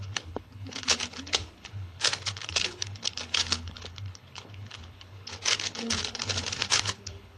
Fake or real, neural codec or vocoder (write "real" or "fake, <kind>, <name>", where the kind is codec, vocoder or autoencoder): fake, codec, HILCodec